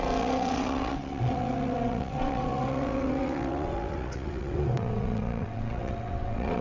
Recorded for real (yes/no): no